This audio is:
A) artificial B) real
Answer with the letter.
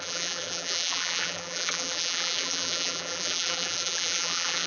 A